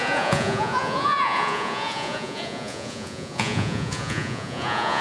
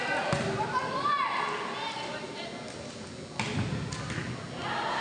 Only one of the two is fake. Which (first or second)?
first